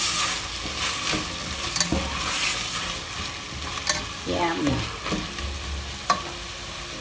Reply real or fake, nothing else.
real